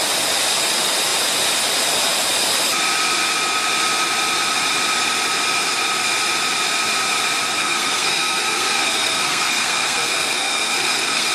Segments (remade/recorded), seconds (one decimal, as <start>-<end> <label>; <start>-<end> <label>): 0.0-7.6 recorded; 7.6-11.3 remade